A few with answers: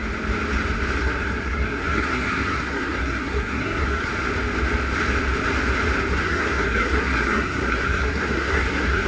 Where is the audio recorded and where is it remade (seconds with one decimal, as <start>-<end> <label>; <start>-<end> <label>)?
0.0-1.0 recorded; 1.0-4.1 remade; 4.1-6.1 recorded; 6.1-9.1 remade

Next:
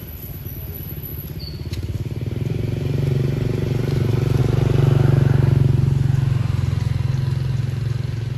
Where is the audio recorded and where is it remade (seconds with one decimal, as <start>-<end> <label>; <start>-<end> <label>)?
0.0-1.1 recorded; 1.1-4.4 remade; 4.4-8.4 recorded

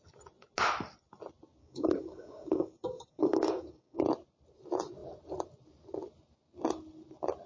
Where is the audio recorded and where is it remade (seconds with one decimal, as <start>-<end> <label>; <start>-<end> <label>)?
0.0-1.6 recorded; 1.6-4.0 remade; 4.0-7.5 recorded